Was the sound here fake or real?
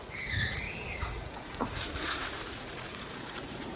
fake